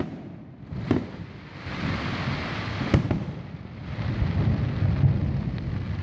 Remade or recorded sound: recorded